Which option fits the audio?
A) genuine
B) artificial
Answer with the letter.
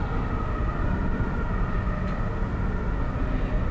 A